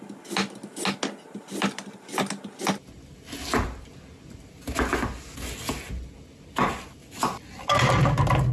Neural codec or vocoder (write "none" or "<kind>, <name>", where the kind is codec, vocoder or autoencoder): none